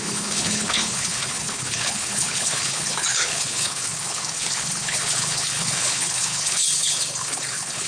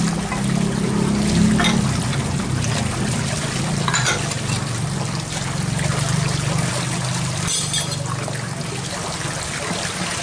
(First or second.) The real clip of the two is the second